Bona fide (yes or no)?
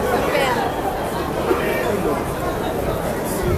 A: yes